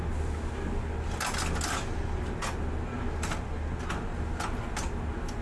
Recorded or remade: recorded